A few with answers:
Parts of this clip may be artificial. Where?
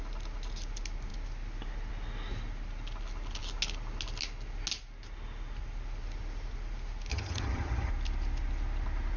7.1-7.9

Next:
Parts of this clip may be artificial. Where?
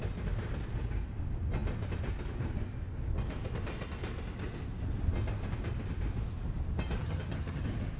7.0-7.6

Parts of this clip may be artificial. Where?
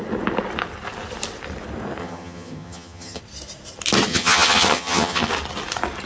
2.0-3.2; 4.1-5.3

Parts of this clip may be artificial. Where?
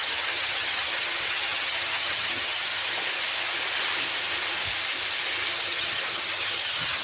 0.0-2.7; 5.5-7.0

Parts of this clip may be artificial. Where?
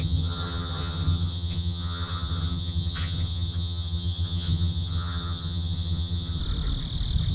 0.0-6.4